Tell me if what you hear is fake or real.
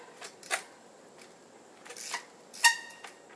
real